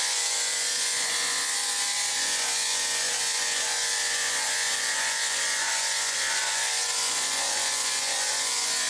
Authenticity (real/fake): fake